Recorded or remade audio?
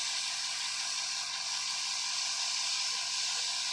recorded